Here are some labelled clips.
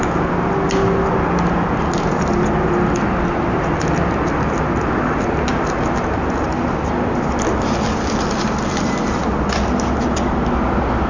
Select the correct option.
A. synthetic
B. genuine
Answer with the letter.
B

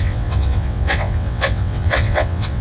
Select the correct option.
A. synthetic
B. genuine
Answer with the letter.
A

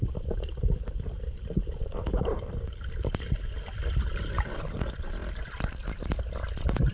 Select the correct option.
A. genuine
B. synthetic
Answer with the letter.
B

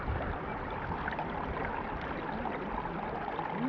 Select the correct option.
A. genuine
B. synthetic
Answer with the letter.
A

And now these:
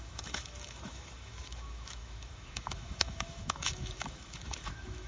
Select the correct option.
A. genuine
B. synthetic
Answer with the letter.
B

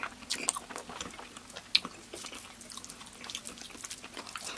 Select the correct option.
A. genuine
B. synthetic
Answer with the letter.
A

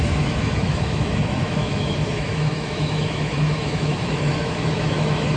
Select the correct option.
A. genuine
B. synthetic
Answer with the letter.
B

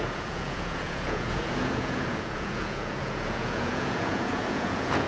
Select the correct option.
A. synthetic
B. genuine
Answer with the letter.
A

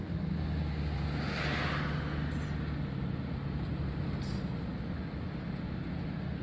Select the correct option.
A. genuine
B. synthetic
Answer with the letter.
A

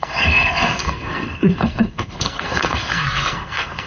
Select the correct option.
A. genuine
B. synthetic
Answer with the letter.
B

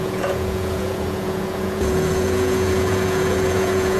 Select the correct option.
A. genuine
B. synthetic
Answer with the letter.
B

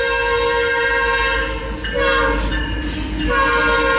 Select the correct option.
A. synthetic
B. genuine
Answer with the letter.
B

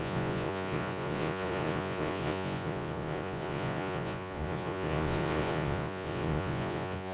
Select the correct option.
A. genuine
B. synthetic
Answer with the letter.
B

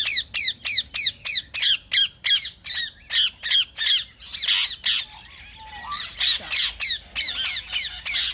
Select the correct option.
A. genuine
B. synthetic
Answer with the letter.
A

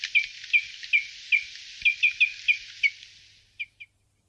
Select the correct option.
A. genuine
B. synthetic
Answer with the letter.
A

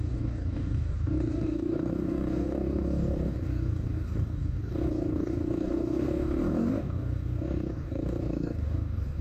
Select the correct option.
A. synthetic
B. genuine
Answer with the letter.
A